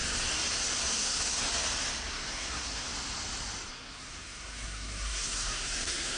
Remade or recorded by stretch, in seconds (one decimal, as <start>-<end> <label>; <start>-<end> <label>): 0.0-0.8 recorded; 0.8-1.5 remade; 1.5-2.1 recorded; 2.1-2.9 remade; 2.9-3.7 recorded; 3.7-6.2 remade